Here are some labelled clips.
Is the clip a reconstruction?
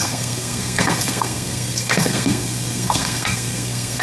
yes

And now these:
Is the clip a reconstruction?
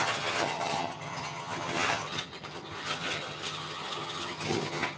yes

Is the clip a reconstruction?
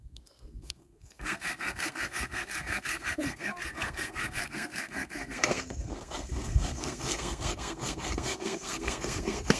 yes